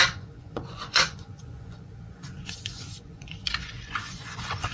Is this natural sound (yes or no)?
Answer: no